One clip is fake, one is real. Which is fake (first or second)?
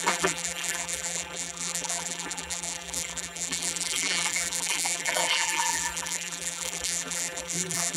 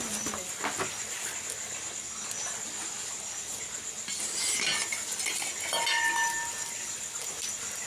first